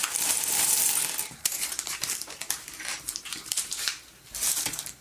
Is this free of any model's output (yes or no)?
no